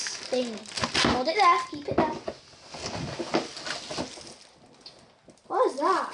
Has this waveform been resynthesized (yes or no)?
no